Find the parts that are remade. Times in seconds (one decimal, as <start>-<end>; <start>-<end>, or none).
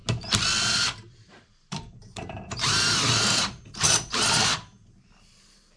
0.6-5.8